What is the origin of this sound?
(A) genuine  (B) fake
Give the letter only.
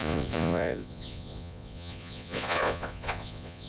B